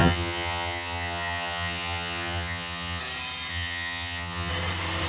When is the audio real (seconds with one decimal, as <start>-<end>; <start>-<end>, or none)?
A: 3.0-3.5; 4.5-5.1